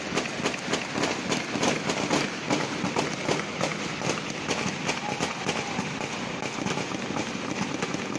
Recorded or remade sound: recorded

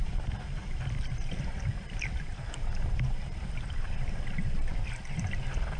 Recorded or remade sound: recorded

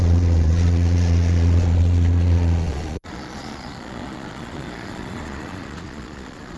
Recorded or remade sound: remade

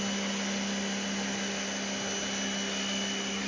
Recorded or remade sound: recorded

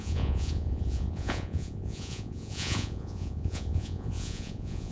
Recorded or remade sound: remade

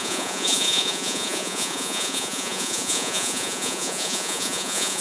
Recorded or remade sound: remade